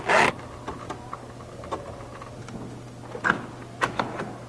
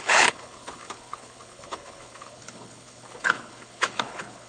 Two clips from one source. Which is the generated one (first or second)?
second